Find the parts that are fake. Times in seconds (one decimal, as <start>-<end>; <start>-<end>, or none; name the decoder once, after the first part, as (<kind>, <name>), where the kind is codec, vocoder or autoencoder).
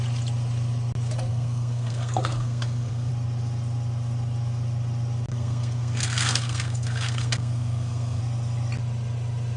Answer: 1.3-3.1 (codec, SNAC); 5.3-8.2